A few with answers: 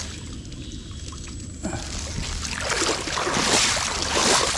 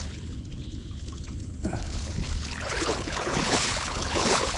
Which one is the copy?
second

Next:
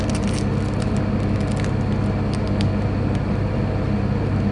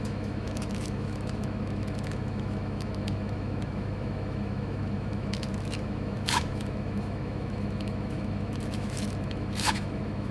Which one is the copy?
second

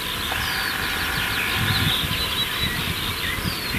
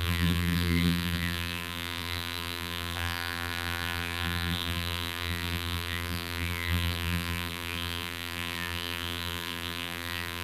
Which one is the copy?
second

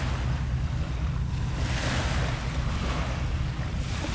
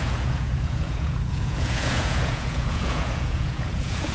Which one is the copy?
second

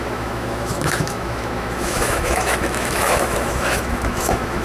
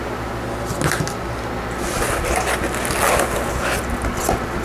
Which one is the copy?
first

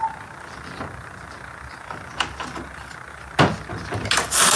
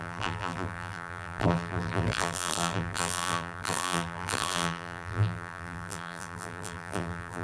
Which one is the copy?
second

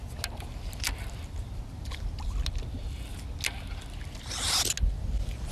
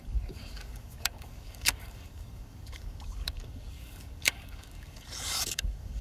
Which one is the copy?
second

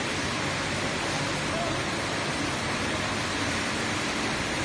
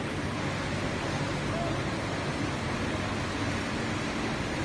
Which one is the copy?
first